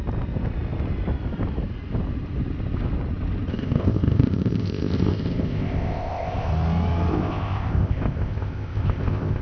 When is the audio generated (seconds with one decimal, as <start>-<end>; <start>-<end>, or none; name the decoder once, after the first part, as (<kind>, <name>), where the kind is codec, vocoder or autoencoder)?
3.5-6.5 (codec, ZipCodec); 7.1-9.4